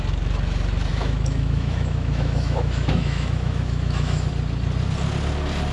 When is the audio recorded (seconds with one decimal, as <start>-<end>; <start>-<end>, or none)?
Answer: 0.0-0.9; 4.3-5.7